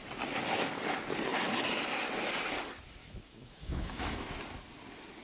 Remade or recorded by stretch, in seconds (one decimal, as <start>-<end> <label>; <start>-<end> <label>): 0.0-3.0 recorded; 3.0-4.4 remade; 4.4-5.2 recorded

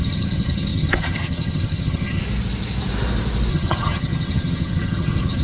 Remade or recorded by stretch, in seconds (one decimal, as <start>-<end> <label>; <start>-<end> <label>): 0.0-2.2 remade; 2.2-3.5 recorded; 3.5-5.4 remade

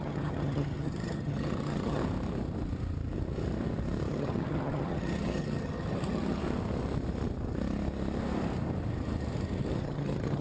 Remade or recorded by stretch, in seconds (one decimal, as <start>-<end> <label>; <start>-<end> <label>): 0.0-2.0 remade; 2.0-4.1 recorded; 4.1-6.4 remade; 6.4-9.8 recorded; 9.8-10.4 remade

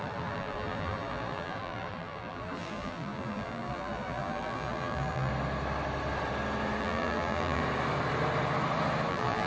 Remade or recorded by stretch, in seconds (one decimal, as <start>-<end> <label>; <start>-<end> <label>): 0.0-5.3 remade; 5.3-6.8 recorded; 6.8-7.6 remade; 7.6-9.1 recorded; 9.1-9.5 remade